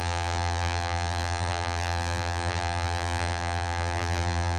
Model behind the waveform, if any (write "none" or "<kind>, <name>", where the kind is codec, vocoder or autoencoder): vocoder, BigVGAN v2